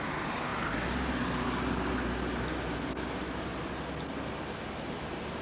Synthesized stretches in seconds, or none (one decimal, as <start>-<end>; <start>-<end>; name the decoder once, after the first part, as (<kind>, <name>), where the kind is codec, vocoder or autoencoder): none